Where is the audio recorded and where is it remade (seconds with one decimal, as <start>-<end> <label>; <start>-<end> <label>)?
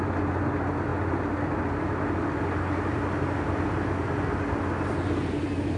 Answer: 0.0-5.8 recorded